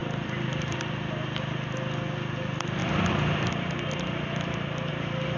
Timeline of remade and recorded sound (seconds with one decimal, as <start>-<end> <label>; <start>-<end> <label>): 0.0-0.7 remade; 0.7-5.4 recorded